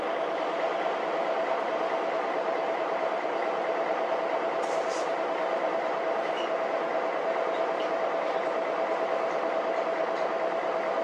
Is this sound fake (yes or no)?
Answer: no